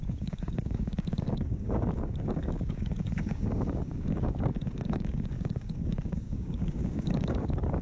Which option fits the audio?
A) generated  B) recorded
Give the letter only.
A